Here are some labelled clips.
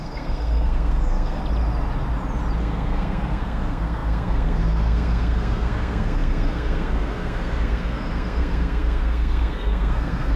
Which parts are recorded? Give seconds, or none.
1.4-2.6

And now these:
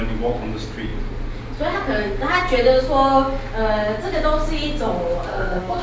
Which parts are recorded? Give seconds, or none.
0.0-5.3

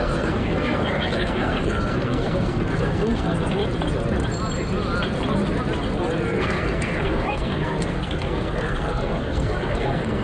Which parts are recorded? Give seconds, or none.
3.6-6.4

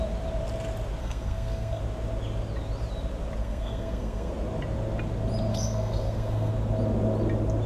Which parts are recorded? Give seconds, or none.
0.0-1.0; 1.8-3.4; 4.3-5.5; 6.5-7.7

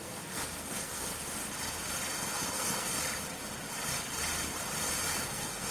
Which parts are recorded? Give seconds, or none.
1.1-2.5; 3.0-5.1